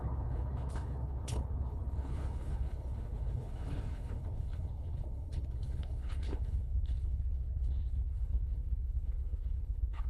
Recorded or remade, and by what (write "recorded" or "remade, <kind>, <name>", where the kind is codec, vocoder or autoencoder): remade, codec, HILCodec